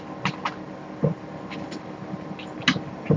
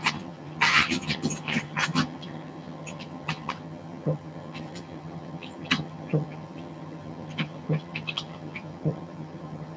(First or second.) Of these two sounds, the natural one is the first